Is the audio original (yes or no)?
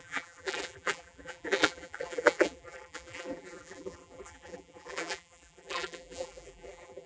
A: no